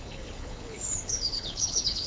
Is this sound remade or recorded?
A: remade